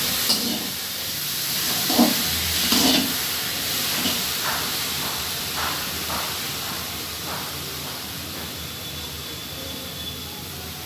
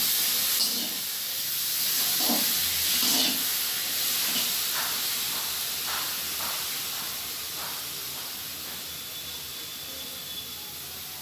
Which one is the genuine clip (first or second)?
second